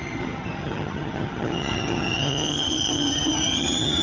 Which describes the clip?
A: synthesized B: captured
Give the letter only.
A